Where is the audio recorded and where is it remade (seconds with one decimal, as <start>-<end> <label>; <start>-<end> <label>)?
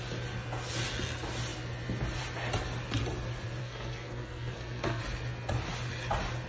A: 0.0-3.6 recorded; 3.6-5.0 remade; 5.0-6.5 recorded